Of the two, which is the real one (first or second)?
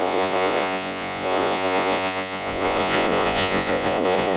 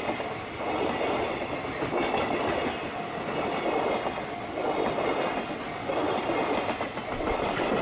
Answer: second